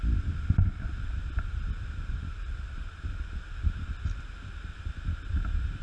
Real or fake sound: real